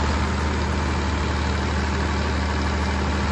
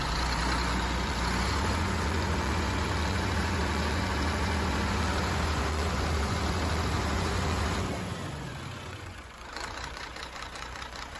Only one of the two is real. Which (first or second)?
first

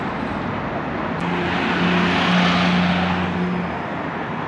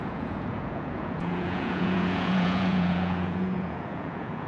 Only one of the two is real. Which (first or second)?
first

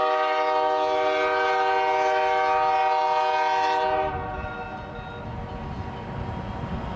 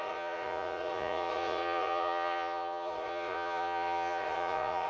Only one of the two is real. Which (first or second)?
first